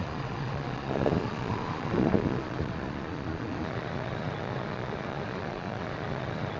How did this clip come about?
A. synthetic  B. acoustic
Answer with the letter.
A